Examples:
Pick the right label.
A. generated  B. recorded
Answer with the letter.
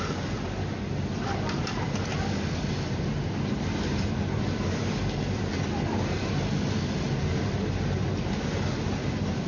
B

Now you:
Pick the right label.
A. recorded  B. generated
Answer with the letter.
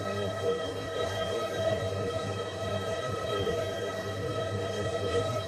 B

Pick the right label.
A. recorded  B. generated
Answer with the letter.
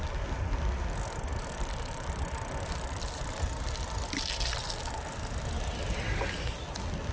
A